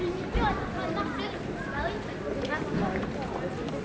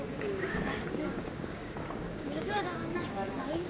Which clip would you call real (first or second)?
first